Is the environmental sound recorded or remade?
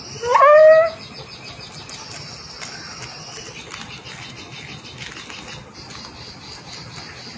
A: recorded